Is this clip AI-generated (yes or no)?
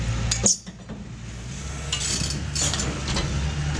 no